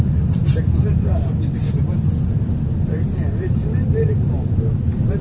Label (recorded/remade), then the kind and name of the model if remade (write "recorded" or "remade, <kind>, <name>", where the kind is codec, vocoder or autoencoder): remade, vocoder, BigVGAN v2